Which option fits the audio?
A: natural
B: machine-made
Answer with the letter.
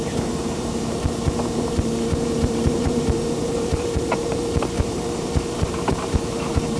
B